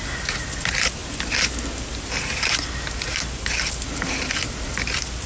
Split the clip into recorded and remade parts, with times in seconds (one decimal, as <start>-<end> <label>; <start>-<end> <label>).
0.0-5.3 recorded